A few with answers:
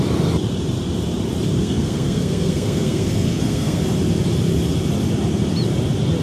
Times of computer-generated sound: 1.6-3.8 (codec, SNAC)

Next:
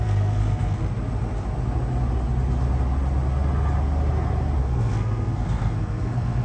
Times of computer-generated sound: 0.0-0.8 (codec, SNAC); 4.6-6.4

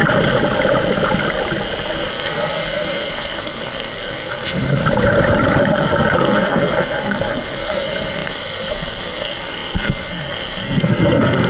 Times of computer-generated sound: 2.1-4.8 (codec, SNAC); 5.6-11.5

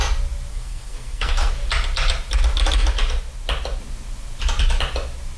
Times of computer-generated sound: 0.5-1.5 (codec, SNAC)

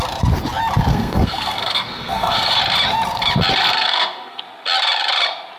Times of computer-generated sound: 0.9-2.6 (codec, SNAC); 3.6-4.4

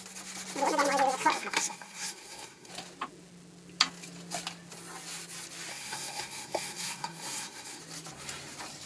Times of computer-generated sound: 1.3-2.7 (codec, SNAC); 5.7-7.8

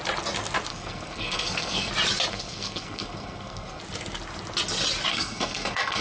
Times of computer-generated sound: 0.7-1.9 (codec, SNAC); 2.3-3.8; 5.1-6.0

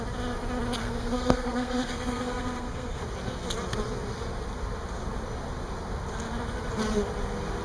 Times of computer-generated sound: 0.8-3.0 (codec, SNAC)